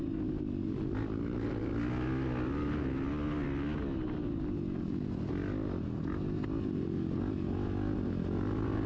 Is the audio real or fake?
real